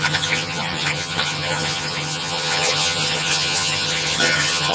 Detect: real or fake fake